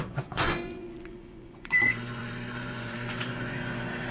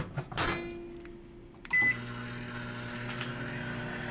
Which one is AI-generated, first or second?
first